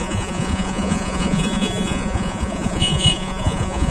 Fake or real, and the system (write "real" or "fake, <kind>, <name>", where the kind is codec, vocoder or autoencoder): fake, vocoder, Vocos